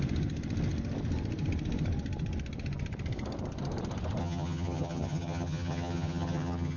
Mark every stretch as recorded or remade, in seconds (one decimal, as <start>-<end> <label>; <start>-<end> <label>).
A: 0.0-4.2 recorded; 4.2-6.8 remade